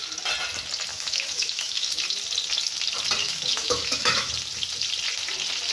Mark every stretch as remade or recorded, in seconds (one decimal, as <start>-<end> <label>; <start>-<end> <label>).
0.0-0.9 recorded; 0.9-1.9 remade; 1.9-3.2 recorded; 3.2-4.3 remade; 4.3-5.7 recorded